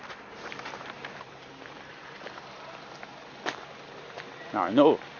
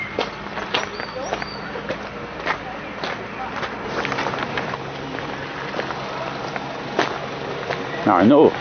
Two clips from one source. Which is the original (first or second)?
second